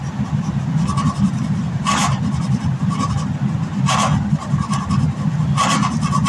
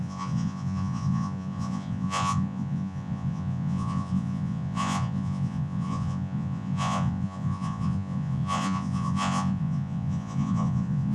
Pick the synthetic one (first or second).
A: second